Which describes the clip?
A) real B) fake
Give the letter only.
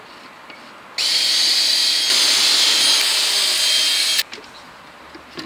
A